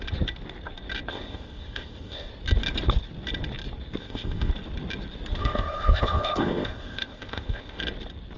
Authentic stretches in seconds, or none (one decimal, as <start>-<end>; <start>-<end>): 0.0-1.1; 2.3-4.0; 4.5-5.4; 7.8-8.4